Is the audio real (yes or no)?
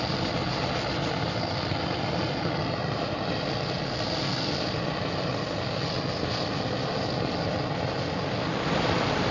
yes